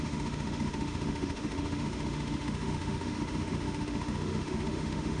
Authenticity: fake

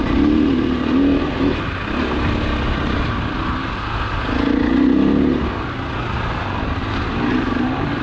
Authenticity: real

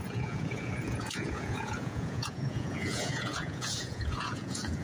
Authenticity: fake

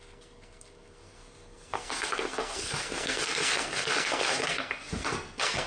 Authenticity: fake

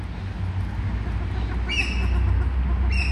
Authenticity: real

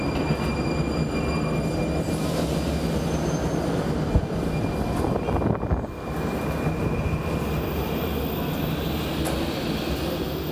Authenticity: real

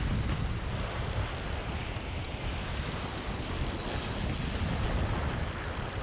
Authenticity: real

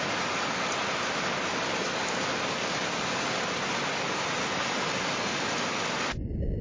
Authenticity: real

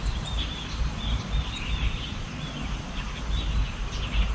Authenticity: real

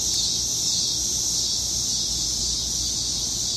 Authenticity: real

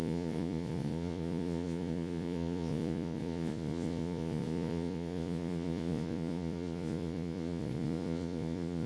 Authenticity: fake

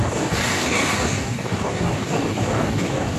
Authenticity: fake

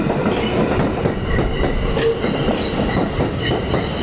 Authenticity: real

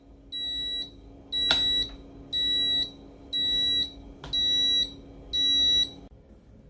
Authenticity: real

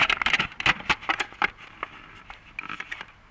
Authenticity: real